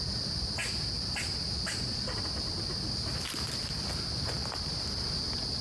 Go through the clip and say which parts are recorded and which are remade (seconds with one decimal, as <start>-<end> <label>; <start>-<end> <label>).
0.0-0.6 recorded; 0.6-4.0 remade; 4.0-5.6 recorded